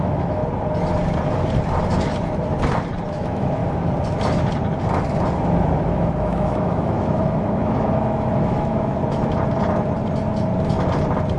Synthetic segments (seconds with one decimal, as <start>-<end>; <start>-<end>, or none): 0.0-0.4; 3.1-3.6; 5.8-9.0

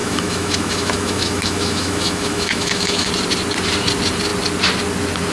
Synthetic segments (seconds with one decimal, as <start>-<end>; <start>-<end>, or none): 0.0-3.1

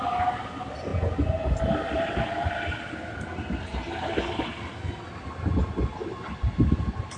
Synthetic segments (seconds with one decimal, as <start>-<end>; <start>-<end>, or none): none